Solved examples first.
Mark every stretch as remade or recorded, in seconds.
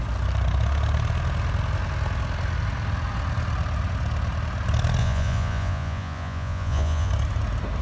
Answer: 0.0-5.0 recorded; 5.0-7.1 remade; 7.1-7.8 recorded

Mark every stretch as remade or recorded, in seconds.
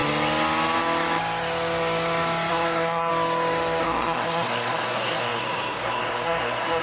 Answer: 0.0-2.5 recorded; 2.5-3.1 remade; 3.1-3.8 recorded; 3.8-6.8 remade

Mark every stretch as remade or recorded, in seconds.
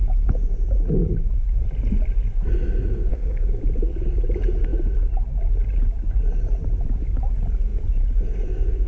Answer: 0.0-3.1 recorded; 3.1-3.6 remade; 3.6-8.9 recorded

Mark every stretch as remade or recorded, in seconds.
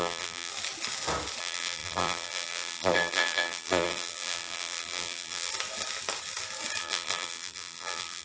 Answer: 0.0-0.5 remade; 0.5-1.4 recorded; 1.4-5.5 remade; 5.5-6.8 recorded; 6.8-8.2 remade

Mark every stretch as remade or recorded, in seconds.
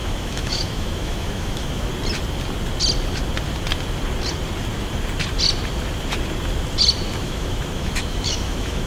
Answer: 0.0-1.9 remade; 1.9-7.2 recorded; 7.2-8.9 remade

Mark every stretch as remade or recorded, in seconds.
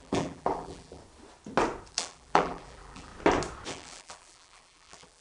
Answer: 0.0-1.0 remade; 1.0-1.9 recorded; 1.9-3.1 remade; 3.1-3.7 recorded; 3.7-5.2 remade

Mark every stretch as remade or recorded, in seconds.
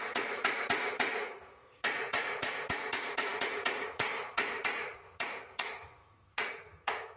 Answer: 0.0-7.2 remade